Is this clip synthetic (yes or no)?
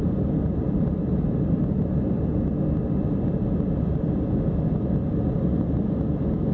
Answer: no